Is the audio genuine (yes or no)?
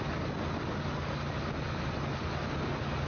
yes